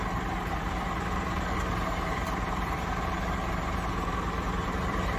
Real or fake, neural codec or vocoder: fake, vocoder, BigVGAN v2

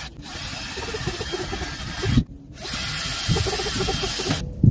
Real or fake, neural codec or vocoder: real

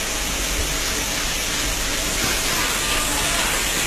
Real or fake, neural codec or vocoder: real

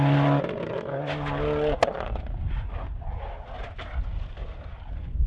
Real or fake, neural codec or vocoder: real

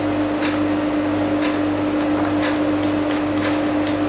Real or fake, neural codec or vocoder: real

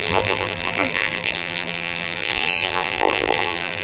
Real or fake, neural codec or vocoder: fake, vocoder, BigVGAN v2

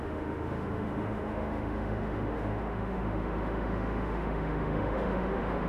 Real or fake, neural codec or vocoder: fake, autoencoder, DAC-VAE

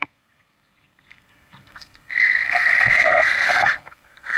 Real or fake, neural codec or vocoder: fake, codec, SNAC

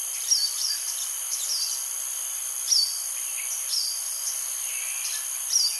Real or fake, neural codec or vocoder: real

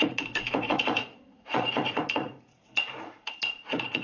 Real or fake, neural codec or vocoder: fake, vocoder, Vocos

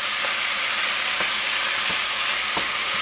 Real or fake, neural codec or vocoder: real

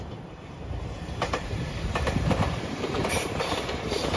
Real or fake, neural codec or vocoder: fake, vocoder, BigVGAN v2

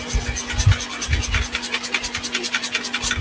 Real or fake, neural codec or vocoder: real